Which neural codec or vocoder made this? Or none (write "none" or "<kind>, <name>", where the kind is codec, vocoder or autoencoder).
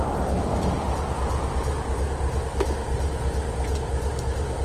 none